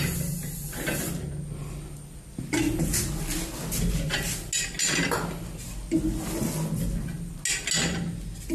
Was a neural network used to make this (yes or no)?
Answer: no